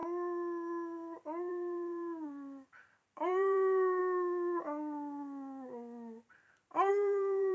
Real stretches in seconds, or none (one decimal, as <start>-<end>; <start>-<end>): 0.0-1.5; 4.0-6.9